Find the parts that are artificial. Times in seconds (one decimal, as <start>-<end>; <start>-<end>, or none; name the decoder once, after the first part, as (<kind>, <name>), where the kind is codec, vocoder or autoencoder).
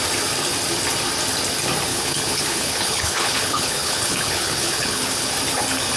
1.9-5.3 (codec, HILCodec)